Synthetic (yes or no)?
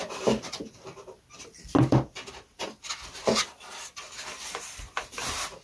no